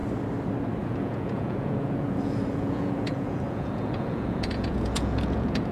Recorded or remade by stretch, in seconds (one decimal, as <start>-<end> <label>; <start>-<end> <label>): 0.0-0.8 recorded; 0.8-5.7 remade